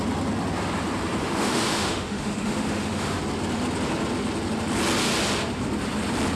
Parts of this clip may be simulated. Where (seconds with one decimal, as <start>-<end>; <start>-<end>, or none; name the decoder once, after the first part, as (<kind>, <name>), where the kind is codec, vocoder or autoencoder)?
1.2-3.2 (autoencoder, DAC-VAE)